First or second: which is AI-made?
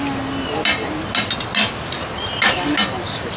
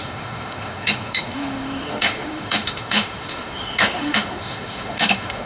second